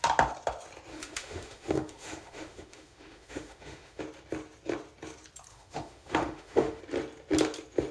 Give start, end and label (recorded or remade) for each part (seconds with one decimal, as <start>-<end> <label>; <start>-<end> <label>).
0.0-0.9 recorded; 0.9-4.0 remade; 4.0-5.5 recorded; 5.5-6.8 remade; 6.8-7.9 recorded